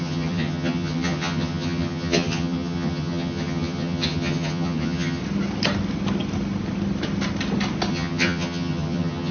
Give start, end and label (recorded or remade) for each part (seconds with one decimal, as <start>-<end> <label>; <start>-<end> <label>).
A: 0.0-5.2 remade; 5.2-7.9 recorded; 7.9-9.3 remade